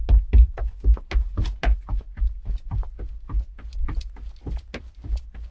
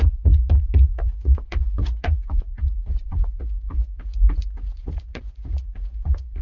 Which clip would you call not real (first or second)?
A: second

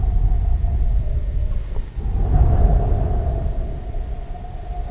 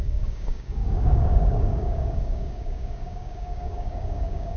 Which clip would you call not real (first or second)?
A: second